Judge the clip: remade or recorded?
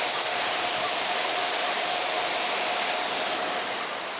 recorded